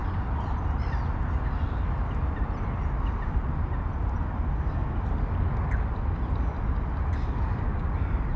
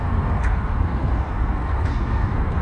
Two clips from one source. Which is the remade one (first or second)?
second